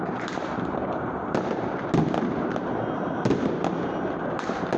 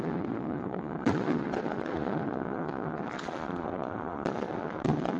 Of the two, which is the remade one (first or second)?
second